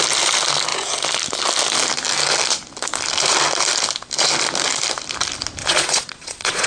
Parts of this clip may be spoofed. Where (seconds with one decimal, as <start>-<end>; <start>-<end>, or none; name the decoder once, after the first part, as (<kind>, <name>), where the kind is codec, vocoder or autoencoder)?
5.6-6.7 (vocoder, Vocos)